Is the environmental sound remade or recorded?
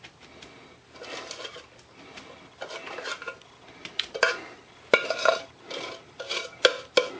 recorded